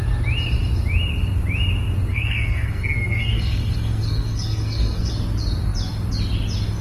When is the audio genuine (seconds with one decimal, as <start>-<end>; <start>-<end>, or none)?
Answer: 0.0-2.1; 5.1-6.8